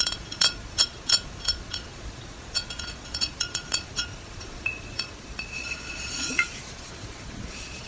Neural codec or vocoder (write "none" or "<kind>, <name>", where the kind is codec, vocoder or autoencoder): vocoder, Vocos